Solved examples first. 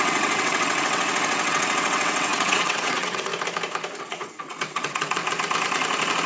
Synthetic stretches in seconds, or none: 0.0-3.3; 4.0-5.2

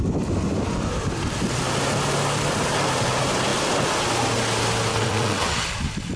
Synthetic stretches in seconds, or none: 4.9-5.6

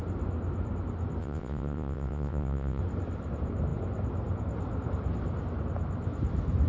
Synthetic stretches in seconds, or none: 1.2-2.8

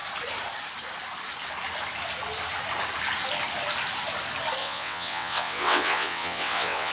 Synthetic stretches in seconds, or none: 4.6-6.9

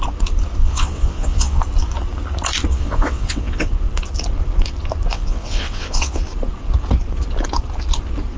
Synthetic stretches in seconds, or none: 0.6-1.6; 2.7-3.7; 5.1-6.2

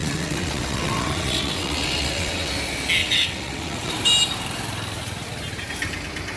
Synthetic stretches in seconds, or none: 0.0-2.5; 3.0-3.9

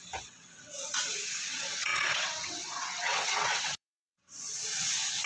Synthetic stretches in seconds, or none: 0.0-5.3

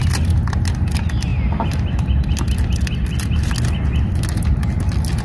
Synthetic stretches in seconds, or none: none